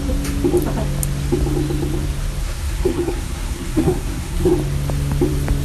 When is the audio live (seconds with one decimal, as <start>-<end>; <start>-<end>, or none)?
0.0-2.4; 4.5-5.6